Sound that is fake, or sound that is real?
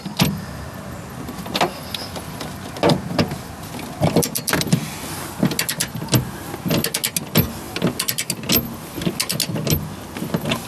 real